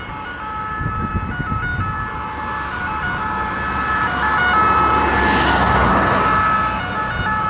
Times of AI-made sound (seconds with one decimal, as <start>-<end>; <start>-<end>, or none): none